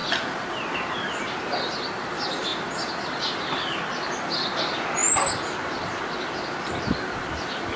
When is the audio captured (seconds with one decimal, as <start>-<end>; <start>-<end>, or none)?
0.0-7.8